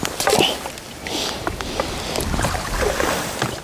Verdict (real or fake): real